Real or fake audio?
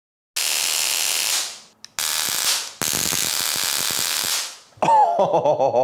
real